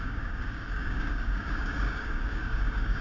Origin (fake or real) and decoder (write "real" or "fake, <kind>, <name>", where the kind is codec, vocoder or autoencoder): fake, codec, DAC